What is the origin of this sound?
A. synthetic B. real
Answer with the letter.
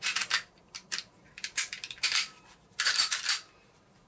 A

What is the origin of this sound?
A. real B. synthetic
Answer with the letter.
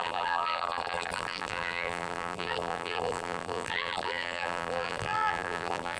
B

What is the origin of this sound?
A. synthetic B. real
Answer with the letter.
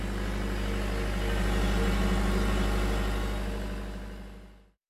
B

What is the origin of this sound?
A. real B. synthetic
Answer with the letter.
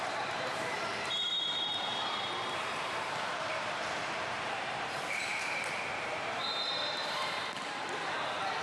B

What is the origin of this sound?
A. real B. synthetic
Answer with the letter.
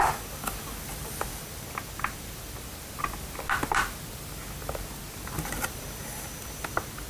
A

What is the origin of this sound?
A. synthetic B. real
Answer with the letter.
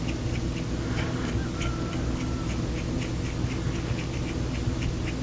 B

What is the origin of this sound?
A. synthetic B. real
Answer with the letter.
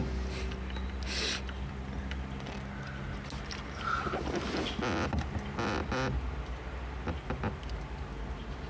B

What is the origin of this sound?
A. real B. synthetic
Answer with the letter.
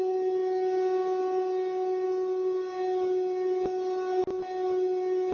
A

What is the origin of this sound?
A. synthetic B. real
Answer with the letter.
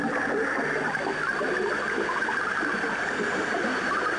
B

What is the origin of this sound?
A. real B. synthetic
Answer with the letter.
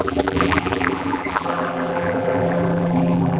B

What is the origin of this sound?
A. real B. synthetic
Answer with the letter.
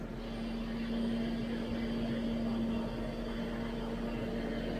A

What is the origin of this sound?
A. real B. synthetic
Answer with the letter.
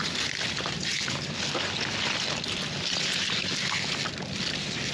A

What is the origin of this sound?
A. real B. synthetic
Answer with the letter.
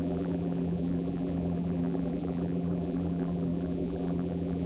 B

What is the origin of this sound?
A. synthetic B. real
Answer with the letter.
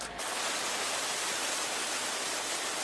B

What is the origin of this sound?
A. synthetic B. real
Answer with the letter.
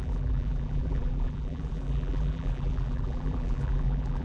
A